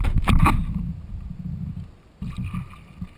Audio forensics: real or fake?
real